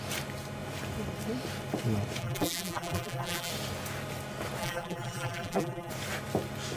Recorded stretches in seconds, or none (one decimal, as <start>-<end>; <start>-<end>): 0.0-2.2; 3.5-4.6; 5.9-6.8